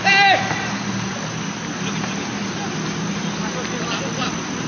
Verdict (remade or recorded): recorded